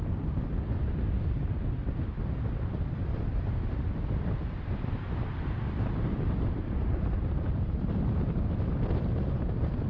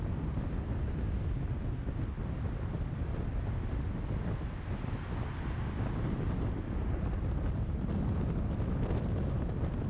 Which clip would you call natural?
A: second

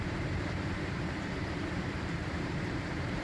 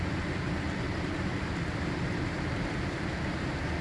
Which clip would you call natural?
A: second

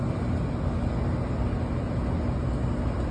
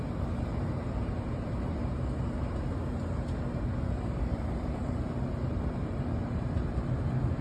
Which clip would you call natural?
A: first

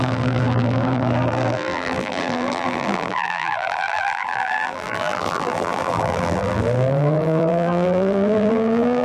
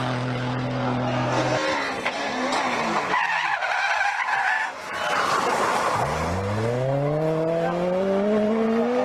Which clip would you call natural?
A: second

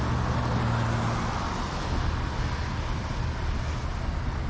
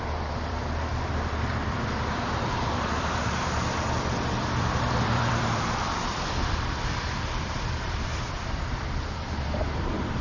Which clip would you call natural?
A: first